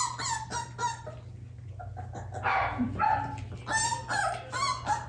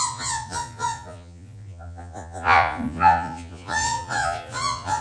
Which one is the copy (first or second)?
second